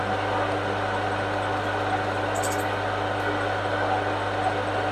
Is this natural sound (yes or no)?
yes